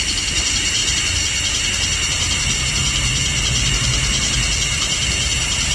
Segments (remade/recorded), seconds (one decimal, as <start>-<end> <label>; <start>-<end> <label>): 0.0-0.8 remade; 0.8-2.6 recorded; 2.6-3.1 remade; 3.1-3.7 recorded; 3.7-5.7 remade